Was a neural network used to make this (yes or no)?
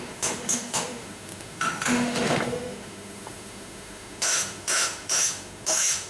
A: yes